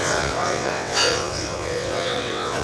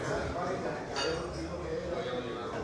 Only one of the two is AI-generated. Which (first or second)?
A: first